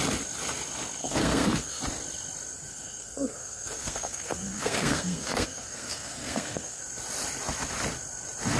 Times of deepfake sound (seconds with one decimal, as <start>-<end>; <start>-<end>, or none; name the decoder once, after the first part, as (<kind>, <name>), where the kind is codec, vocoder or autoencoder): 1.0-1.8 (codec, SNAC); 2.7-6.8